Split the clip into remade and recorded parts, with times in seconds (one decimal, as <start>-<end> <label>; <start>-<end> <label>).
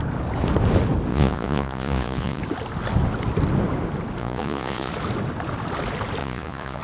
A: 0.0-1.1 recorded; 1.1-2.4 remade; 2.4-4.2 recorded; 4.2-4.9 remade; 4.9-6.2 recorded; 6.2-6.8 remade